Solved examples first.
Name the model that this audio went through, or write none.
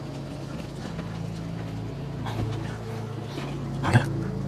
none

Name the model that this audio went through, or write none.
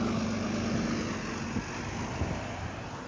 none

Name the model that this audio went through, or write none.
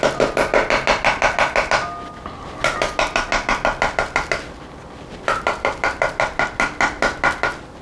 none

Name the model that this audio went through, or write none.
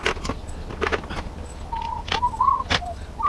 none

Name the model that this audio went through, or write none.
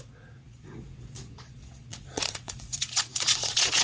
vocoder, Vocos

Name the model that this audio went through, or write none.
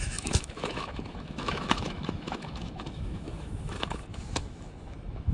autoencoder, DAC-VAE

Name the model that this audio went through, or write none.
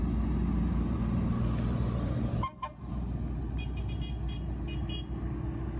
none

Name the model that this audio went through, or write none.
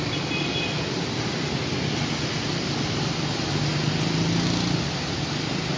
none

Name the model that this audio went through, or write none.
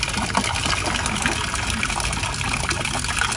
none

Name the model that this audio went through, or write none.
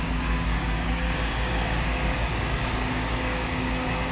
codec, DAC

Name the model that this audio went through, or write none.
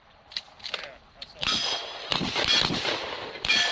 none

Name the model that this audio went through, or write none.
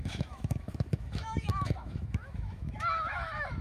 autoencoder, DAC-VAE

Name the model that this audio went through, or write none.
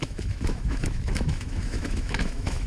autoencoder, DAC-VAE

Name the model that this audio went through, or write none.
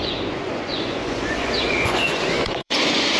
vocoder, Vocos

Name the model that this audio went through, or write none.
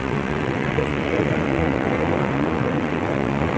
vocoder, WaveNeXt